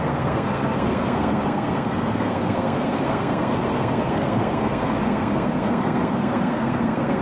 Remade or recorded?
remade